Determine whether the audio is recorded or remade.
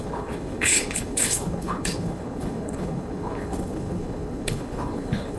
remade